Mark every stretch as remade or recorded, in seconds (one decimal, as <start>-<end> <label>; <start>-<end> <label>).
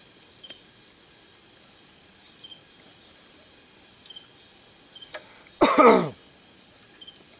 0.0-7.4 recorded